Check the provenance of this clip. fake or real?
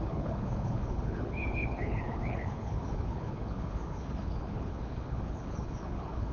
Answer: fake